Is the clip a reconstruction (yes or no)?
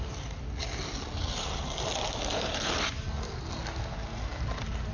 no